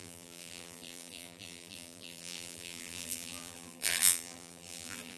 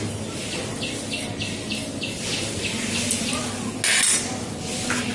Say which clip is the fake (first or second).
first